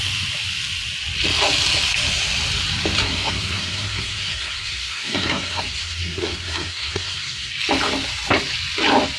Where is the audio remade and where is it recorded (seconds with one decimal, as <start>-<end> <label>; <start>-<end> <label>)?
0.0-3.0 recorded; 3.0-7.5 remade; 7.5-9.2 recorded